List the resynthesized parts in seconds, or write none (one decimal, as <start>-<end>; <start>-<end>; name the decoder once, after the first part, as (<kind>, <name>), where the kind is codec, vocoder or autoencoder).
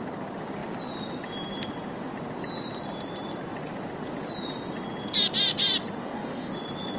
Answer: 6.0-6.5 (codec, DAC)